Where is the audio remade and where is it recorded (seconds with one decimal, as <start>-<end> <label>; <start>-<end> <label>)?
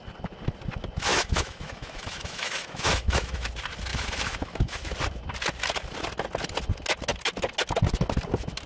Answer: 0.0-1.1 recorded; 1.1-3.5 remade; 3.5-3.9 recorded; 3.9-4.9 remade; 4.9-8.7 recorded